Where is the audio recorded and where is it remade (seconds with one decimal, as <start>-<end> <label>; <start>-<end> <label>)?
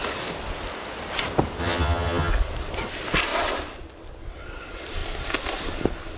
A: 0.0-1.6 recorded; 1.6-2.3 remade; 2.3-6.2 recorded